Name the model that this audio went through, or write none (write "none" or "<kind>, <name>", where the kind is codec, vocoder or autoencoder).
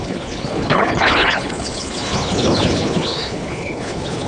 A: codec, HILCodec